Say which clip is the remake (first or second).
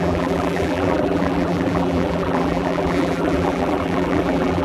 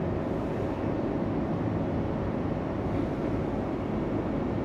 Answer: first